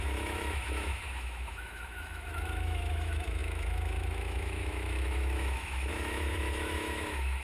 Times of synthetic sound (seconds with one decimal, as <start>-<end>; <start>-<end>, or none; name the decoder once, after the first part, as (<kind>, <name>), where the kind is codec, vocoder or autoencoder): 0.0-7.4 (autoencoder, DAC-VAE)